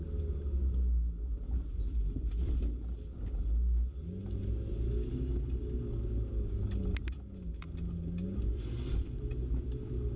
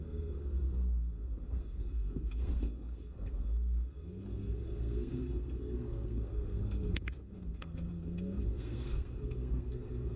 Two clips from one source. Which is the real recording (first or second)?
first